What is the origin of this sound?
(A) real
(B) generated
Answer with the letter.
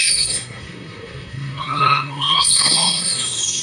B